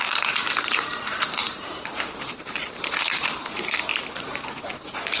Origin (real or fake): fake